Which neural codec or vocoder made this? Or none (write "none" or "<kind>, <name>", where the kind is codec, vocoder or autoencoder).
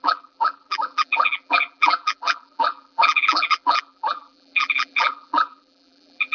vocoder, BigVGAN v2